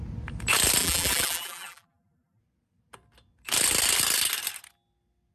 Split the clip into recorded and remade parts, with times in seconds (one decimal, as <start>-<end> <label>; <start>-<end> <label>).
0.0-0.8 recorded; 0.8-2.4 remade; 2.4-5.3 recorded